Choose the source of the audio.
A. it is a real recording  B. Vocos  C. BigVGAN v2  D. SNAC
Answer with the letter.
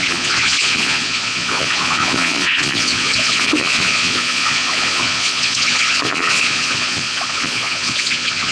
B